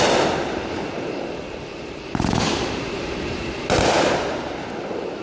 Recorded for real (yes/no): no